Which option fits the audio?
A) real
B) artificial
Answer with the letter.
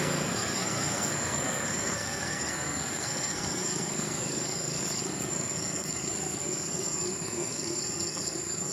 B